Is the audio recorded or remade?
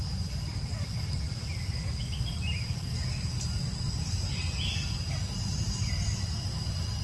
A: recorded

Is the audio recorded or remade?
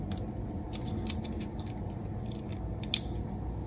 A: recorded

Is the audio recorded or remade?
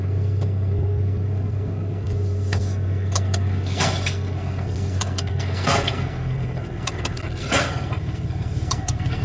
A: remade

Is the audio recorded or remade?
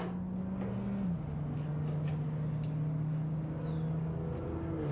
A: recorded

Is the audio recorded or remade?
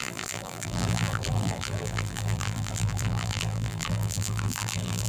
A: remade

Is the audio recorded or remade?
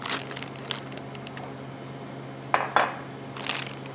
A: recorded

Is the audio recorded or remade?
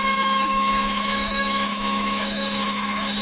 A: remade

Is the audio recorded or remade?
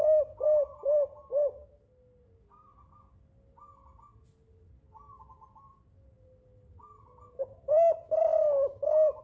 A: recorded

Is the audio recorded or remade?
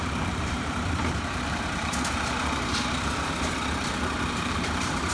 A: remade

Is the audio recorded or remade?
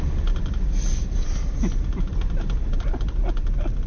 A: remade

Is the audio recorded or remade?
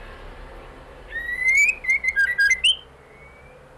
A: recorded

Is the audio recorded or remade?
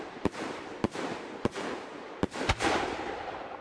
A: remade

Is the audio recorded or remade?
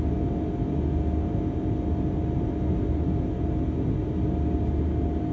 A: recorded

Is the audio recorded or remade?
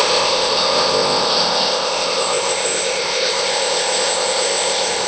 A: remade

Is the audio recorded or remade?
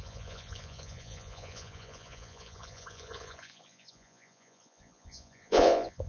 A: remade